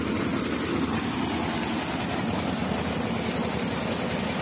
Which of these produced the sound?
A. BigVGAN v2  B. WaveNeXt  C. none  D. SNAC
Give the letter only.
C